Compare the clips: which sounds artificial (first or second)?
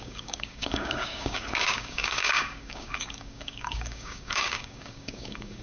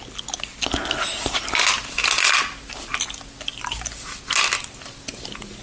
first